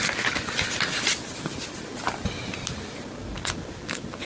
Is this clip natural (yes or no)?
yes